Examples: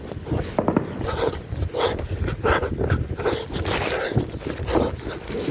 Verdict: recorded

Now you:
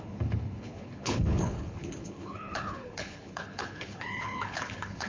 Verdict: remade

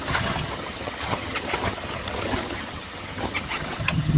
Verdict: remade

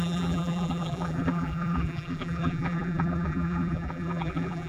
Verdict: remade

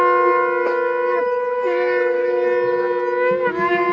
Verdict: recorded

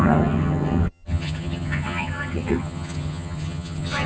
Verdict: remade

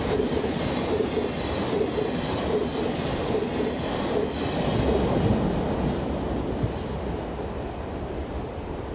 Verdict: recorded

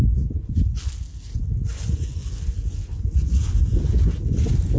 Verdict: recorded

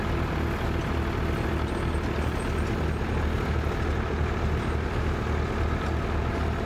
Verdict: recorded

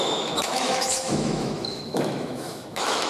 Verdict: remade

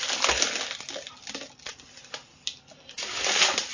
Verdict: recorded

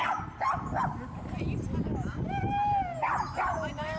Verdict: recorded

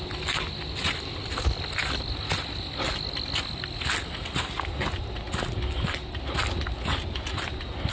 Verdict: recorded